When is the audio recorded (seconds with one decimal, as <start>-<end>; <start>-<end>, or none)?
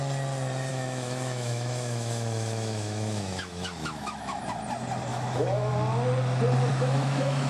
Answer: 0.0-0.7; 4.4-5.1; 5.7-6.7